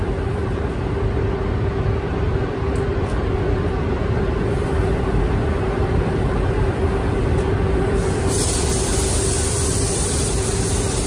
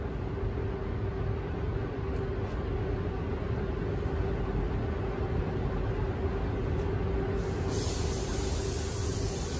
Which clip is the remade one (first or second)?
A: first